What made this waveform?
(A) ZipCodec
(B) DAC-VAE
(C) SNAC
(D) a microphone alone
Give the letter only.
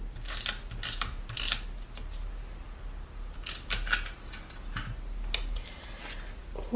D